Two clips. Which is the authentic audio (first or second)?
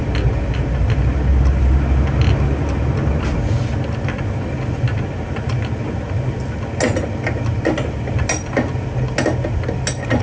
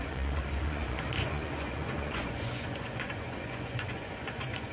first